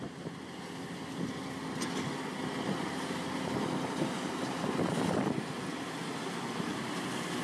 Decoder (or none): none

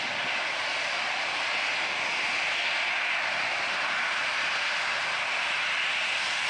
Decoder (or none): none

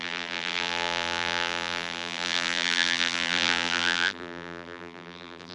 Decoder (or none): vocoder, BigVGAN v2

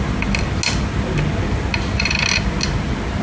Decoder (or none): none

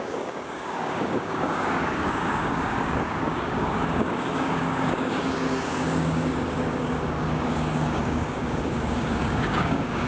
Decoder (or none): codec, DAC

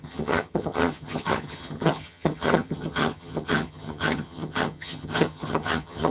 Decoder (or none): vocoder, HiFi-GAN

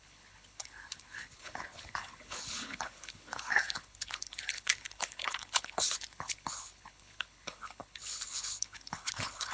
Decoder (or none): codec, HILCodec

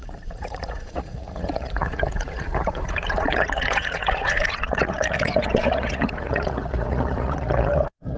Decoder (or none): vocoder, Vocos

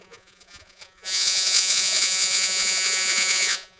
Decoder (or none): vocoder, Vocos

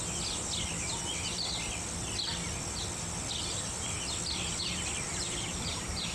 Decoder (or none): none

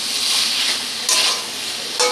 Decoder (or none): none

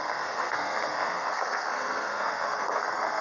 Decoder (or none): codec, SNAC